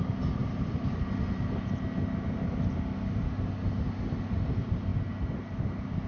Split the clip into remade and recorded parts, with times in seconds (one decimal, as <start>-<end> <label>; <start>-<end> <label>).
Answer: 0.0-6.1 recorded